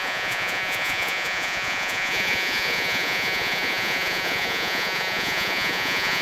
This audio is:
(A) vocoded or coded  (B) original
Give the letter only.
A